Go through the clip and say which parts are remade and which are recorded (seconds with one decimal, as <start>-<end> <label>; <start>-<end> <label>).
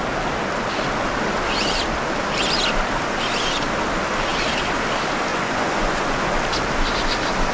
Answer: 0.0-5.3 recorded; 5.3-6.3 remade; 6.3-7.5 recorded